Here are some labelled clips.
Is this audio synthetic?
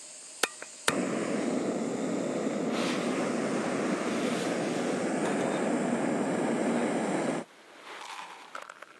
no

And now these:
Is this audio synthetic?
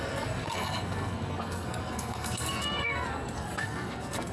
yes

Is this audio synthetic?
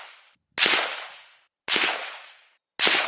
no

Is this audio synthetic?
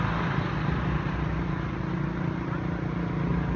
no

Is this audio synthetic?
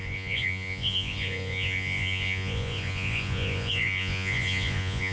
yes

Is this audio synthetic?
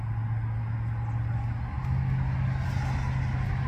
no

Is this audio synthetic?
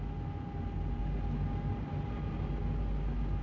no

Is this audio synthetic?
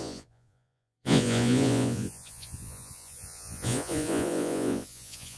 yes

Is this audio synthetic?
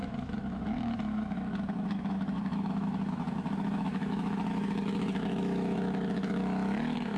yes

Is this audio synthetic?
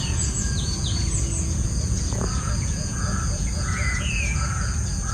yes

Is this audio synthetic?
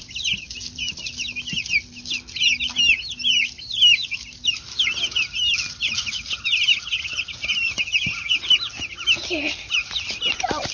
no